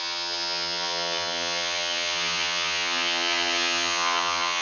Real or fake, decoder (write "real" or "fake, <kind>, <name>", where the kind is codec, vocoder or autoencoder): fake, vocoder, HiFi-GAN